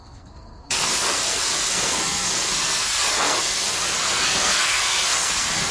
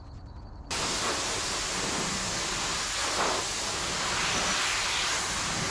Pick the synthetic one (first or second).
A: first